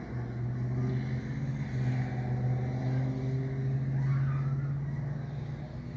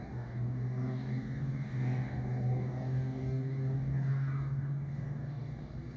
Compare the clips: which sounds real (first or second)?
first